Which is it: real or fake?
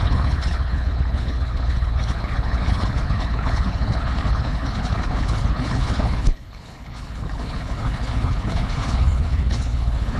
fake